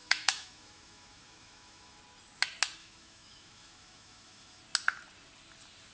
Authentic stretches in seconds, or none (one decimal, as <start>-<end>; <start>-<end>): 2.0-2.8; 4.6-5.9